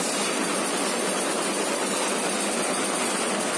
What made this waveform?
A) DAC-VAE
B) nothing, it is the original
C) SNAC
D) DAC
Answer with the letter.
B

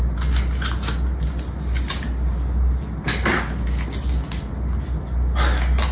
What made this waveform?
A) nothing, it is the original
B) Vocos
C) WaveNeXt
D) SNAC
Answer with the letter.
A